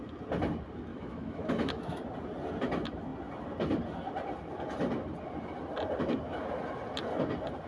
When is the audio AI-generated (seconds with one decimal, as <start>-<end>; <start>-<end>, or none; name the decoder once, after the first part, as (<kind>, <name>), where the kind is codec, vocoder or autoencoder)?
0.9-2.0 (autoencoder, DAC-VAE)